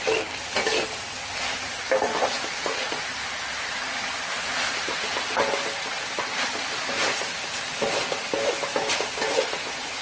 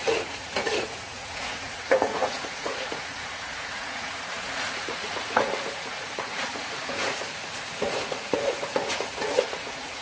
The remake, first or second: second